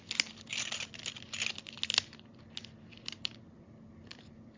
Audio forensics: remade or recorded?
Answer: recorded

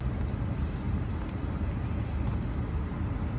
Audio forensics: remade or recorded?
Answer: recorded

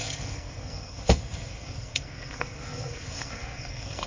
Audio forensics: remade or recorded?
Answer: remade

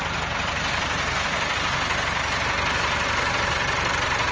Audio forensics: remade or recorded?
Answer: recorded